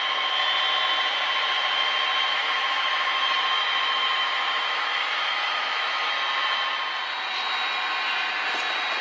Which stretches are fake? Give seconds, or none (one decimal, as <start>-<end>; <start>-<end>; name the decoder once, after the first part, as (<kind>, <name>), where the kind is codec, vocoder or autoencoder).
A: 2.3-6.1 (autoencoder, DAC-VAE)